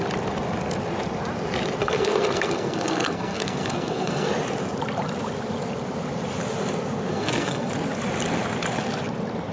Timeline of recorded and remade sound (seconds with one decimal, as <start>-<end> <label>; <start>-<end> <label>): 0.0-1.8 recorded; 1.8-4.3 remade; 4.3-7.1 recorded; 7.1-7.7 remade; 7.7-9.5 recorded